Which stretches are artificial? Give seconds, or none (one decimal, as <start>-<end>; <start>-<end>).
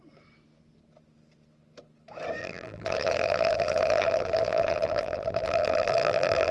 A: 2.4-6.5